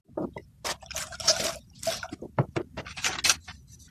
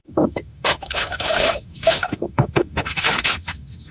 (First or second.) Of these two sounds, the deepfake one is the second